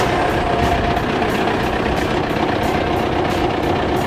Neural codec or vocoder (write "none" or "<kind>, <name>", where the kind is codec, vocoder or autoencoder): none